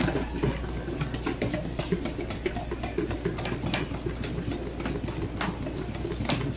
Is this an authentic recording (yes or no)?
yes